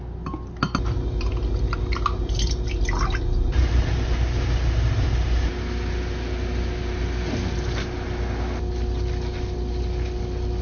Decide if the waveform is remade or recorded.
recorded